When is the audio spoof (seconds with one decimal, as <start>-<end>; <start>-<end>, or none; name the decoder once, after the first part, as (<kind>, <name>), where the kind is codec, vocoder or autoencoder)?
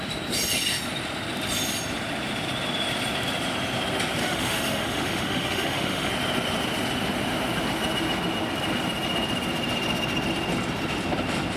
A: 4.2-6.1 (autoencoder, DAC-VAE)